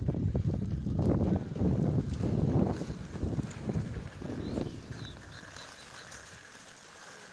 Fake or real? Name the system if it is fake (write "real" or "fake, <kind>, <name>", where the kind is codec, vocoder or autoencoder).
real